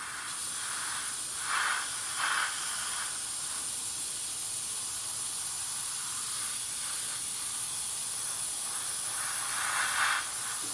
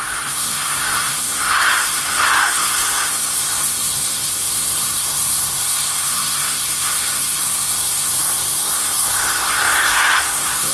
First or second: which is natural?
first